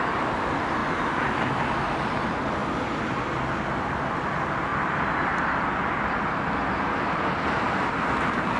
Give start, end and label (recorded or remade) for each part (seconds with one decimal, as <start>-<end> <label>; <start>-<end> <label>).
0.0-8.6 recorded